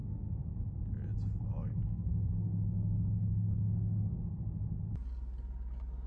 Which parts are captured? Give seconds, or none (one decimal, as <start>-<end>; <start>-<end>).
0.5-1.7; 4.2-6.1